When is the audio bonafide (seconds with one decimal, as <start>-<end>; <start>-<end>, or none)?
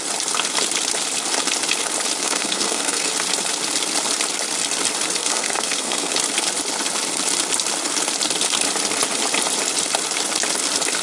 0.0-2.2; 3.1-5.2; 6.1-11.0